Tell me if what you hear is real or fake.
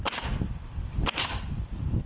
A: real